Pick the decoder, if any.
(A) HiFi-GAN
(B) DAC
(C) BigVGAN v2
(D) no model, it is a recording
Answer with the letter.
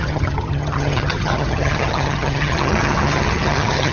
A